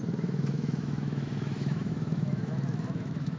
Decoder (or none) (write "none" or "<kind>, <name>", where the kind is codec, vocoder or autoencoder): autoencoder, DAC-VAE